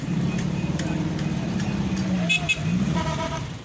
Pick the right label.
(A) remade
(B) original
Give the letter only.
A